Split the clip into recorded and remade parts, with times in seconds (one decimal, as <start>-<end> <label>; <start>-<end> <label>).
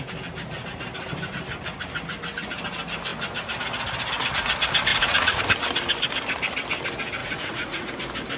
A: 0.0-4.9 recorded; 4.9-5.4 remade; 5.4-7.2 recorded; 7.2-7.9 remade; 7.9-8.4 recorded